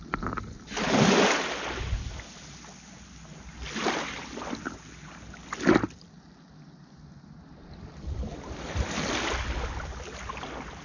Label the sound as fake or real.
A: real